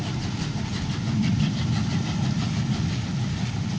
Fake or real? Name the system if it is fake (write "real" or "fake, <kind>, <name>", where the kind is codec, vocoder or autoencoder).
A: real